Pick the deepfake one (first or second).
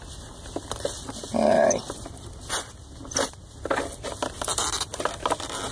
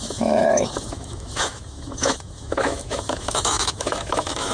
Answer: second